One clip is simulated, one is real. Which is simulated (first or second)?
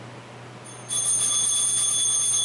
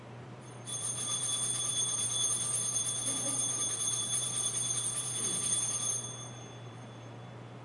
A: second